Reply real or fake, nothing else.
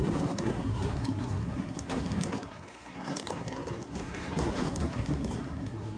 fake